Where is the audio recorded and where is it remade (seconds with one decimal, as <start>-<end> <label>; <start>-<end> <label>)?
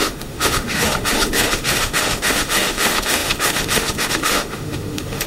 0.0-5.3 remade